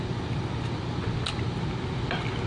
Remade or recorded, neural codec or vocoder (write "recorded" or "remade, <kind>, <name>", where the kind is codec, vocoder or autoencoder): recorded